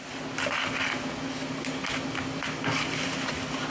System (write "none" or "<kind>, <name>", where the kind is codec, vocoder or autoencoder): none